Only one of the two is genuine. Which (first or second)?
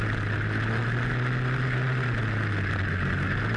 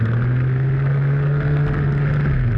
first